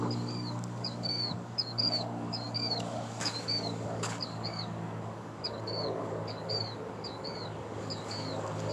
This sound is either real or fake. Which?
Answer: fake